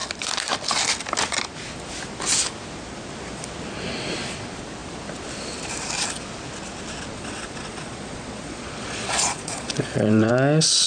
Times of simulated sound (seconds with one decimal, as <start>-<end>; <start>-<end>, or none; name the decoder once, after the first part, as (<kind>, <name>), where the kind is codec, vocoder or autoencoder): 7.1-10.3 (vocoder, Vocos)